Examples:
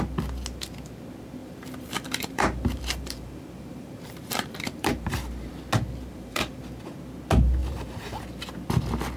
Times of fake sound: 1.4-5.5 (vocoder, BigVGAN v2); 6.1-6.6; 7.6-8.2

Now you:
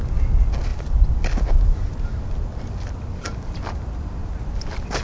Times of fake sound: none